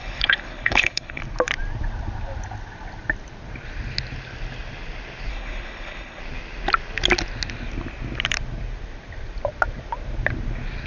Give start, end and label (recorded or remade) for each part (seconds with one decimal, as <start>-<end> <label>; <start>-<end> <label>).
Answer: 0.0-1.2 remade; 1.2-5.3 recorded; 5.3-6.2 remade; 6.2-10.9 recorded